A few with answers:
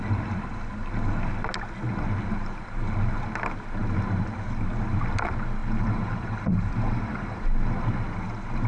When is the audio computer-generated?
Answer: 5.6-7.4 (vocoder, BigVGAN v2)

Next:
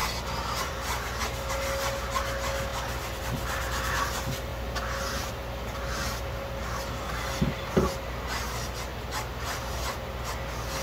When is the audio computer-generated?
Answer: none